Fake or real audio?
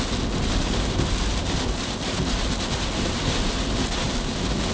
real